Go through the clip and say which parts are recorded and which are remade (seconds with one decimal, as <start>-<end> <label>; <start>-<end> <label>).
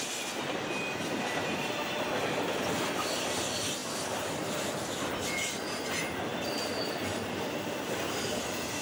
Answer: 0.0-3.8 recorded; 3.8-5.1 remade; 5.1-6.3 recorded; 6.3-8.0 remade; 8.0-8.8 recorded